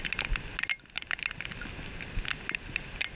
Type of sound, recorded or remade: recorded